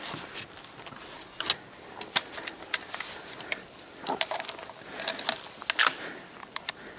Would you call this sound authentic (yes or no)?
yes